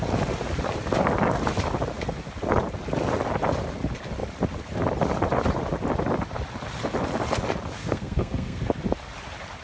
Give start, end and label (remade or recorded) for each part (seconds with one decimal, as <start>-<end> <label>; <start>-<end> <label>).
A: 0.0-7.8 recorded; 7.8-8.6 remade; 8.6-9.6 recorded